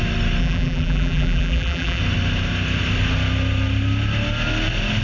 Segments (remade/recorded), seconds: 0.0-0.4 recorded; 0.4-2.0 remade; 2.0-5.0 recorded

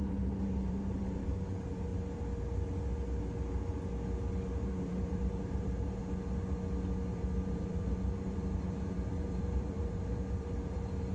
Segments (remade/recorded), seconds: 0.0-1.9 remade; 1.9-4.5 recorded; 4.5-6.0 remade; 6.0-7.1 recorded; 7.1-11.1 remade

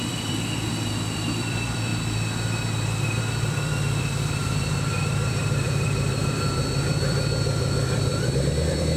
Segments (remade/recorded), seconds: 0.0-1.9 remade; 1.9-3.2 recorded; 3.2-9.0 remade

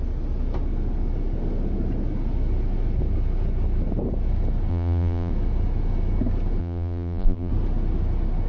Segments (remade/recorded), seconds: 0.0-4.7 recorded; 4.7-5.3 remade; 5.3-6.6 recorded; 6.6-7.5 remade; 7.5-8.5 recorded

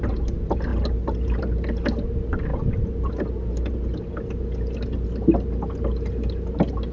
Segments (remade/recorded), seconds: 0.0-0.7 recorded; 0.7-1.4 remade; 1.4-6.9 recorded

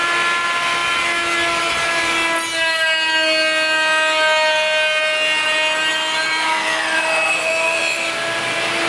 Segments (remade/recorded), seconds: 0.0-8.9 recorded